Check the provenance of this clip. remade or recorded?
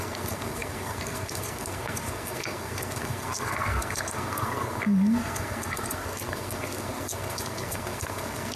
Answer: remade